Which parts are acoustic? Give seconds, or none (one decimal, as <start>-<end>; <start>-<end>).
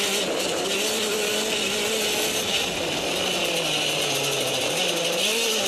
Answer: 0.0-5.7